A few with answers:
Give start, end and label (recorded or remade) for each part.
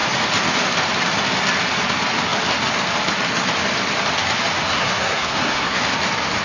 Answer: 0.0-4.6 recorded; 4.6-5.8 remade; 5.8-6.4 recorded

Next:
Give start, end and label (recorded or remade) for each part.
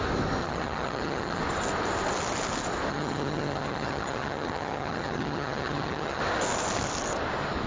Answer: 0.0-0.4 recorded; 0.4-1.4 remade; 1.4-2.9 recorded; 2.9-6.2 remade; 6.2-7.7 recorded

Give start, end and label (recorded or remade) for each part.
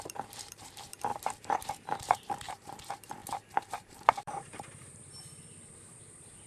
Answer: 0.0-6.5 remade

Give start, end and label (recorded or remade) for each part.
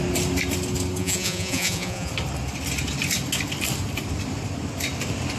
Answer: 0.0-1.0 recorded; 1.0-2.1 remade; 2.1-5.4 recorded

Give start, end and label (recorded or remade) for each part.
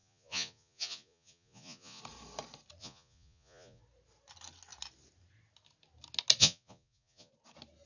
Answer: 0.0-2.0 remade; 2.0-2.8 recorded; 2.8-3.8 remade; 3.8-6.4 recorded; 6.4-7.3 remade; 7.3-7.9 recorded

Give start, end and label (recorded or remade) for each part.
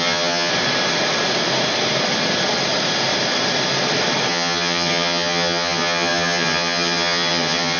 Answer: 0.0-0.5 remade; 0.5-4.3 recorded; 4.3-7.8 remade